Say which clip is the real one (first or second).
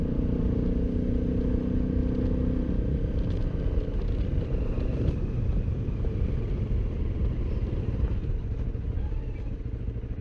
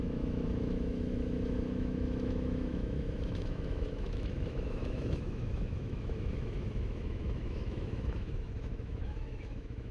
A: first